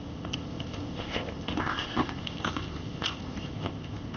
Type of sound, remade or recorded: remade